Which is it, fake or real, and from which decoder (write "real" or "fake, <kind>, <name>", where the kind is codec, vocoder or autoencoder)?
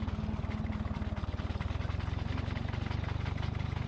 real